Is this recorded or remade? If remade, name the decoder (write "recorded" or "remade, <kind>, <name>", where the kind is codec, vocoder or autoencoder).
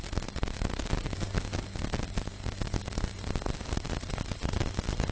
recorded